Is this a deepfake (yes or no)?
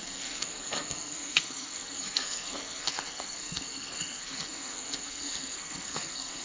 yes